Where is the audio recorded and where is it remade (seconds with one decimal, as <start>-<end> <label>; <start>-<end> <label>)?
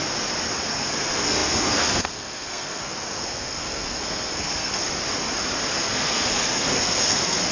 0.0-0.7 recorded; 0.7-4.8 remade; 4.8-5.8 recorded; 5.8-7.5 remade